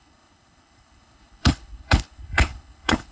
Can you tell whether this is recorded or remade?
remade